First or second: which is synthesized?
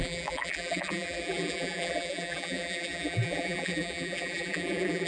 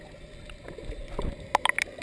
first